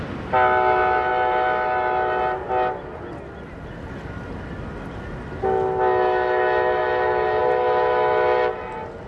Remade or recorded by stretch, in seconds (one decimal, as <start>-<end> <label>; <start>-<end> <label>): 0.0-9.1 recorded